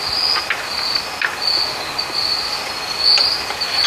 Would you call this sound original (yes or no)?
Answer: yes